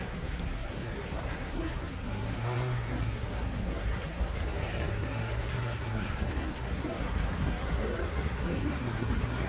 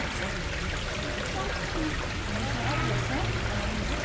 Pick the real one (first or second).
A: second